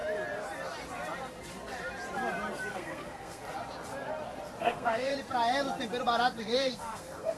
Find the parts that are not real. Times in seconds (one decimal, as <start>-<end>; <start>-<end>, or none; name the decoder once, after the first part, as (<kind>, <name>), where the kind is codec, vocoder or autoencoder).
2.7-3.4 (codec, SNAC); 4.6-5.1; 6.4-7.4